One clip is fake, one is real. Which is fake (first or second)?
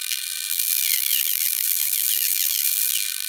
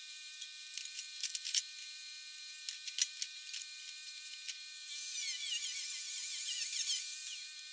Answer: first